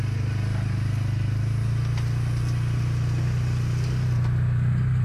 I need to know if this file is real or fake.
real